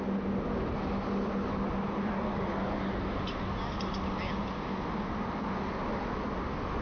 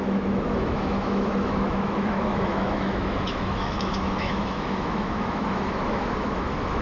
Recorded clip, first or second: first